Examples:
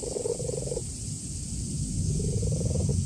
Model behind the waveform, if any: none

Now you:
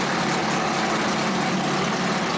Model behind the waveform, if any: none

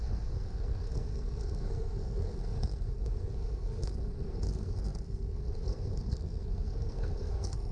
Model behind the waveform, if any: codec, SNAC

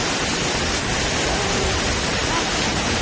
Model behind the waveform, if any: none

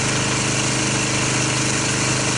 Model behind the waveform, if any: none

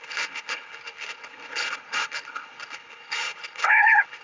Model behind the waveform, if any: codec, HILCodec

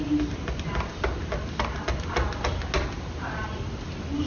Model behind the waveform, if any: none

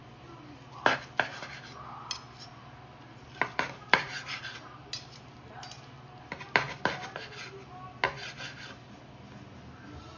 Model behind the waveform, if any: none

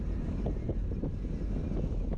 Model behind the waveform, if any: none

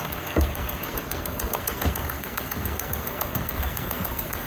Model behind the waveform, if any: codec, SNAC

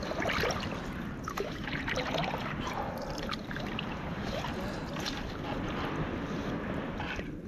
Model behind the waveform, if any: none